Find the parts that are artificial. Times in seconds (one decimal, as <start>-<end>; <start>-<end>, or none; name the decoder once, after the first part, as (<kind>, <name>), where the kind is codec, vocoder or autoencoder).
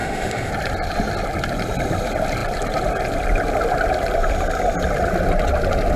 0.0-0.5 (autoencoder, DAC-VAE)